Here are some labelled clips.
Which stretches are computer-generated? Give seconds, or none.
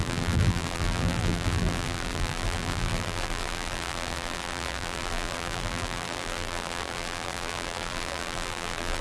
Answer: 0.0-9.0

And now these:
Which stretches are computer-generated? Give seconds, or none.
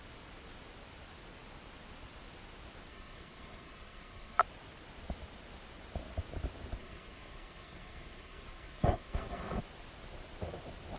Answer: 2.9-4.4; 6.8-9.6